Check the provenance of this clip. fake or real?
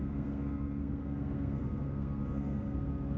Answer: fake